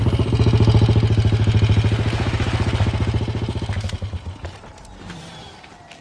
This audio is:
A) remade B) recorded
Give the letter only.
B